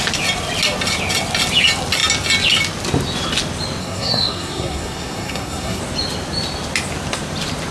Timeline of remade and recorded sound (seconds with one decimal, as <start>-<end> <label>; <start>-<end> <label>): 0.0-3.8 recorded; 3.8-5.8 remade; 5.8-7.7 recorded